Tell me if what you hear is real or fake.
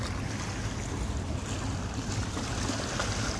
real